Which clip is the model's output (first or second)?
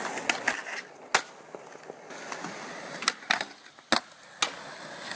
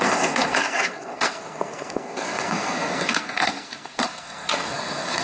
second